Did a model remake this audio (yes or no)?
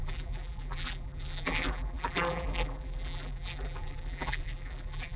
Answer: yes